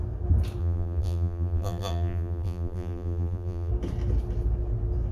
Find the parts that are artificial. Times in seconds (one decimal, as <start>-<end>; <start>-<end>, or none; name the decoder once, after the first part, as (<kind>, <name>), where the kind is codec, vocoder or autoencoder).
0.6-3.7 (vocoder, BigVGAN v2)